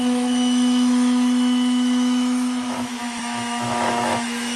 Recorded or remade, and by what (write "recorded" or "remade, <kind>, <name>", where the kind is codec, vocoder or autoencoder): remade, autoencoder, DAC-VAE